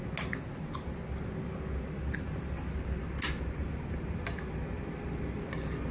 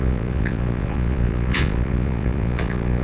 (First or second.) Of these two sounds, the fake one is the second